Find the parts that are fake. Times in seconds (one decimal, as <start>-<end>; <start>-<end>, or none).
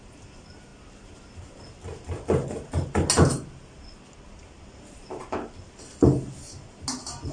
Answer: none